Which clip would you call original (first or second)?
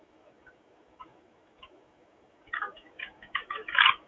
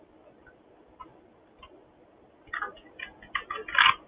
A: second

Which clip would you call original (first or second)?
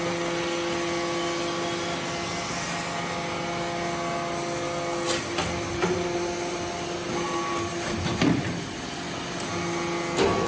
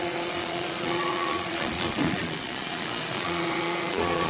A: first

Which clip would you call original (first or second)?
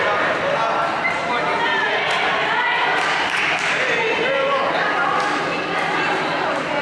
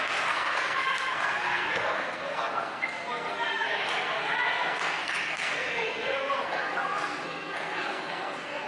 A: first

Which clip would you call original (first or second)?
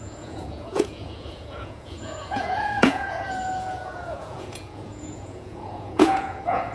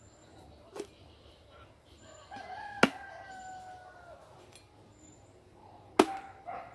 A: second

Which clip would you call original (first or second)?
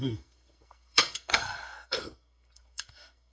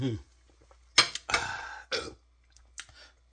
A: second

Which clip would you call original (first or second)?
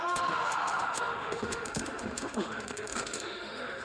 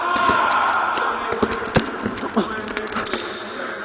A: second